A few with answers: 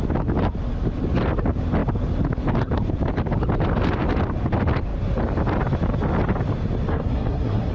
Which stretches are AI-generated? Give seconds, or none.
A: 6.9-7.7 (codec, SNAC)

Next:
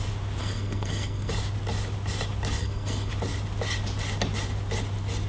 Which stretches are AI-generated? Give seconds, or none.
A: 0.4-1.3 (codec, SNAC); 2.6-3.1

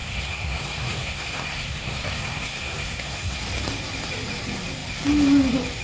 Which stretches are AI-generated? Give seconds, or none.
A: 0.0-3.4 (codec, SNAC)

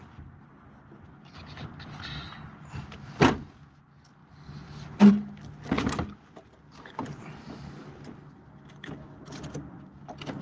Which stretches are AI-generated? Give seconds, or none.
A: none

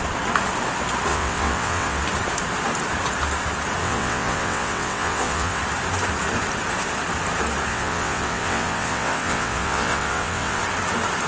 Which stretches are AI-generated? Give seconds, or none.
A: 1.1-2.0 (vocoder, WaveNeXt); 3.8-5.6; 7.7-10.6

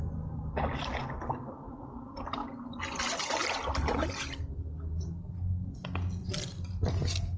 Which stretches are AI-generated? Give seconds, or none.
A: none

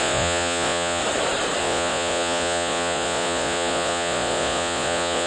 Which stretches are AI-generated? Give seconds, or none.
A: 0.0-1.0 (vocoder, Vocos); 1.6-5.3